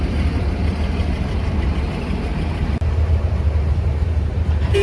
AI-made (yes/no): yes